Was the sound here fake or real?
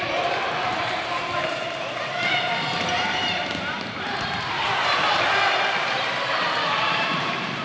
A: fake